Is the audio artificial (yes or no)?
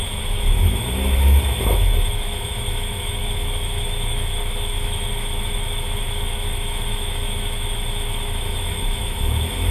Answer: yes